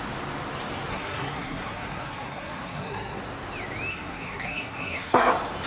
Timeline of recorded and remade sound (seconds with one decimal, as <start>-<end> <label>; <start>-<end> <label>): 0.0-0.9 recorded; 0.9-3.2 remade; 3.2-3.9 recorded; 3.9-5.3 remade; 5.3-5.7 recorded